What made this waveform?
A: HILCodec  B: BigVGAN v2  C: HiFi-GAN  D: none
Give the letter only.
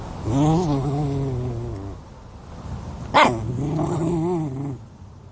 D